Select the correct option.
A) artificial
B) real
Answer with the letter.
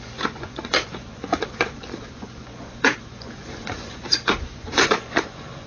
A